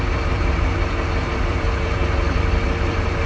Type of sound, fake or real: fake